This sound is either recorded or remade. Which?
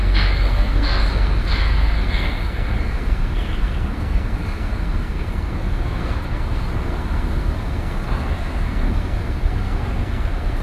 remade